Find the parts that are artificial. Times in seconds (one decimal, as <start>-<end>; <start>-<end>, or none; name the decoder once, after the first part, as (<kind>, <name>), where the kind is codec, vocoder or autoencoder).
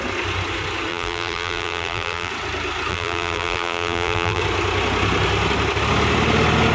0.9-2.3 (vocoder, BigVGAN v2); 2.9-4.4